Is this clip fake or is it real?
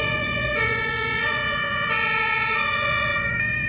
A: fake